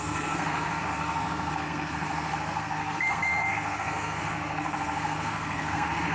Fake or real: fake